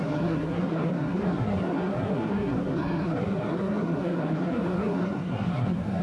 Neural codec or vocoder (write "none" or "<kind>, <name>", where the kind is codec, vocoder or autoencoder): codec, SNAC